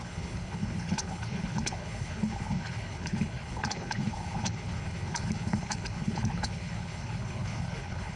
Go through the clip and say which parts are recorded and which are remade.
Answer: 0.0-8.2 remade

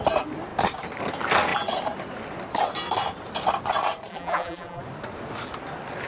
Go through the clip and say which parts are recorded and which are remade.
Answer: 0.0-4.1 recorded; 4.1-4.8 remade; 4.8-6.1 recorded

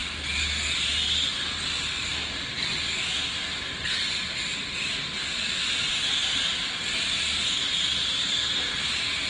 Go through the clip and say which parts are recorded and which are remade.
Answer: 0.0-2.1 recorded; 2.1-5.9 remade; 5.9-9.3 recorded

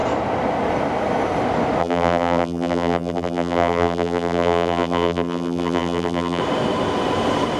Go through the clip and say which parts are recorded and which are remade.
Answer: 0.0-1.8 recorded; 1.8-6.4 remade; 6.4-7.6 recorded

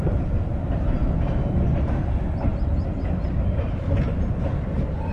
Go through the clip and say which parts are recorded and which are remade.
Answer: 0.0-5.1 recorded

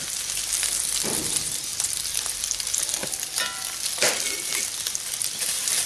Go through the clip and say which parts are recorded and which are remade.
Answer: 0.0-1.7 remade; 1.7-4.9 recorded; 4.9-5.9 remade

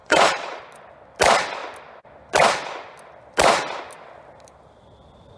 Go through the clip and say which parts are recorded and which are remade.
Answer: 0.0-0.6 remade; 0.6-5.4 recorded